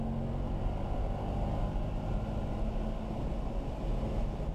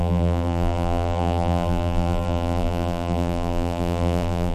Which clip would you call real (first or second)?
first